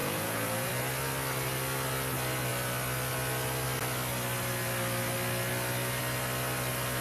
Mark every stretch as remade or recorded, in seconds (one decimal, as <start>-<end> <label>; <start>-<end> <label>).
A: 0.0-0.7 remade; 0.7-7.0 recorded